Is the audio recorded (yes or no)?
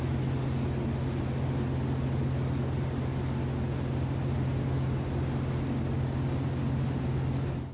yes